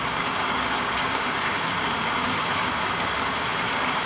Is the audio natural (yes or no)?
no